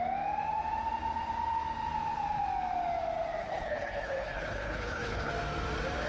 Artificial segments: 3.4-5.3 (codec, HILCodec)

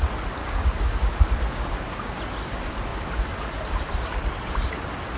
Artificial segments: 0.4-2.2 (codec, DAC)

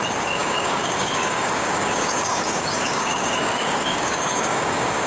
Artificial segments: 0.0-5.1 (codec, DAC)

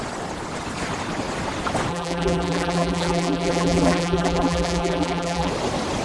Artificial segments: 1.9-5.5 (vocoder, BigVGAN v2)

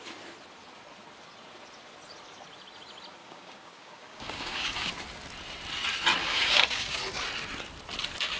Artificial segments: 3.2-4.9 (codec, DAC); 6.2-7.0

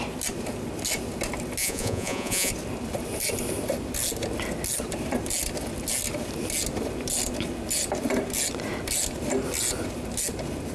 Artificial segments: 1.6-2.5 (vocoder, Vocos)

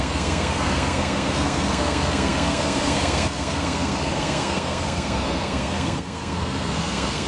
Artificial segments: 0.0-7.3 (codec, SNAC)